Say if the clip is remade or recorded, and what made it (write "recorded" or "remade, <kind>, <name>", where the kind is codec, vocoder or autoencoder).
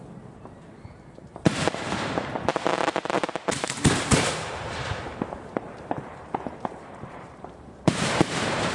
remade, vocoder, BigVGAN v2